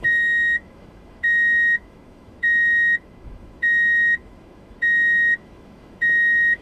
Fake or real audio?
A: fake